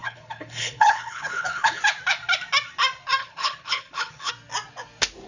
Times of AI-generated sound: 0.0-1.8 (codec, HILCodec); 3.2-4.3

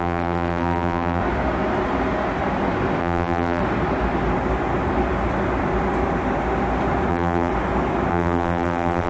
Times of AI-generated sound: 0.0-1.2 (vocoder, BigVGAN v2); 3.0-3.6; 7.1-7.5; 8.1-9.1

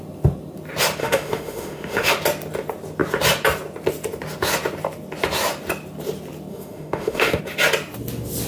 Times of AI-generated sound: 1.0-2.1 (autoencoder, DAC-VAE); 6.5-7.4

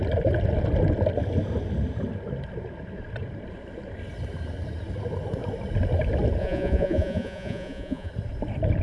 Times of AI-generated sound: 6.4-8.1 (vocoder, Vocos)

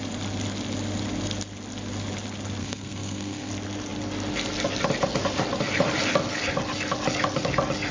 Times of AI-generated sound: 2.6-3.5 (codec, SNAC)

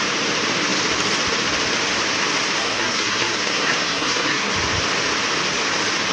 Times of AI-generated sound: 2.6-4.5 (codec, SNAC)